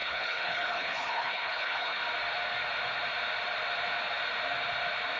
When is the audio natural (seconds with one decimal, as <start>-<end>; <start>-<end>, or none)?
2.0-5.2